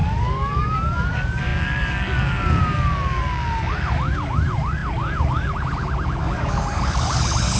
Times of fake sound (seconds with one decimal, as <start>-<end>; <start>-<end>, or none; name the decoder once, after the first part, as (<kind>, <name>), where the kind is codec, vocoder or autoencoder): 0.0-7.6 (codec, DAC)